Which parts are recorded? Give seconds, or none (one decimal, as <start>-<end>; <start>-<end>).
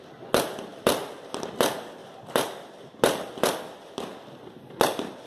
0.0-5.3